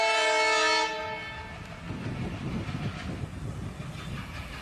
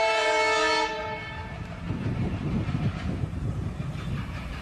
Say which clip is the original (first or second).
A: first